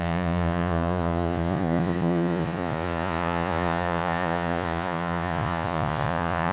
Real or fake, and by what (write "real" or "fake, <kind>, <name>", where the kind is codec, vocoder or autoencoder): fake, vocoder, Vocos